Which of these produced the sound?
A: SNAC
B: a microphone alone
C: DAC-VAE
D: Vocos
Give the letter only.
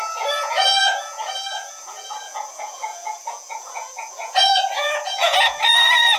D